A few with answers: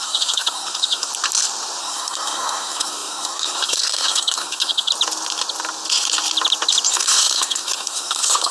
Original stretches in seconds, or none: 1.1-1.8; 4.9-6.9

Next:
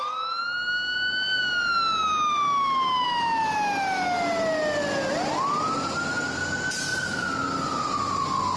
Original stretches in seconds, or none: 0.0-8.6